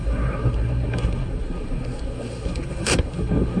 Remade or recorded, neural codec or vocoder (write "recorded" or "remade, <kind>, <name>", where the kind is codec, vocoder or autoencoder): remade, codec, SNAC